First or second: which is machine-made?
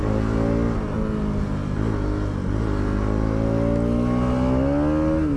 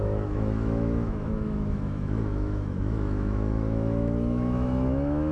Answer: second